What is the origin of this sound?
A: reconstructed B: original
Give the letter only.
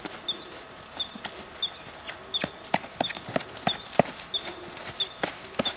B